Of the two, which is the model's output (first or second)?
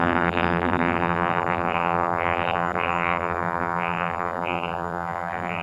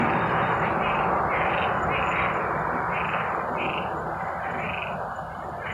first